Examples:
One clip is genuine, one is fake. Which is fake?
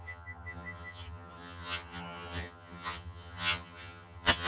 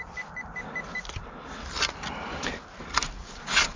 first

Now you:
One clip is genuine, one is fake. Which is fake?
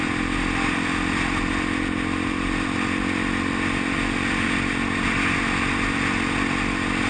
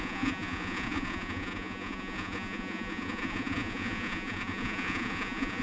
second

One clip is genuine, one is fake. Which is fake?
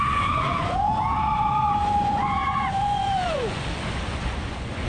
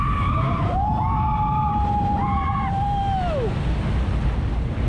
first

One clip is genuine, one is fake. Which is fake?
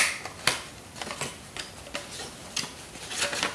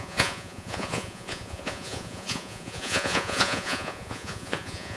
second